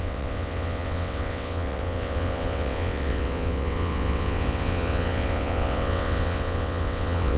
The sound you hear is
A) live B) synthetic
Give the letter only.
B